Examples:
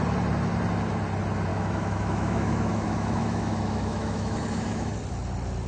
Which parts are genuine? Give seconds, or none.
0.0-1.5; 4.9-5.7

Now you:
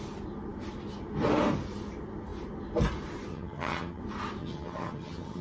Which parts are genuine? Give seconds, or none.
0.0-3.3; 4.0-4.4

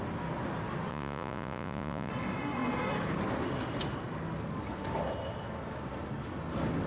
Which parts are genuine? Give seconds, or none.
0.0-0.9; 2.1-6.9

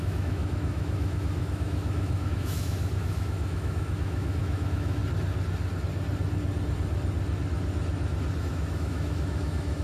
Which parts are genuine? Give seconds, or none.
5.0-8.4

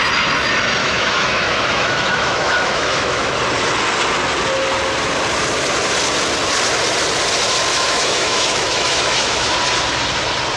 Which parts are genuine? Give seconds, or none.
0.0-0.8; 3.3-7.7; 9.5-10.6

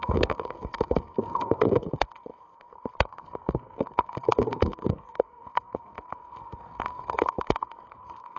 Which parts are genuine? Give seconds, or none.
none

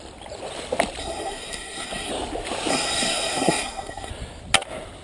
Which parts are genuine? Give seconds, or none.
0.0-1.0; 2.1-2.7; 4.1-5.0

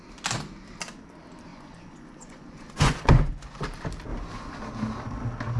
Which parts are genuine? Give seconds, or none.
0.0-1.5; 3.6-5.6